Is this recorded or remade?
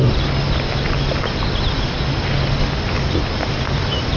recorded